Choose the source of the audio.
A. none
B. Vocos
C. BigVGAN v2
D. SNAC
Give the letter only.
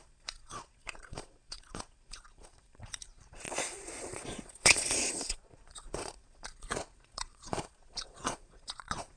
B